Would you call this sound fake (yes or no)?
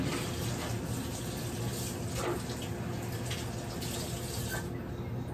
no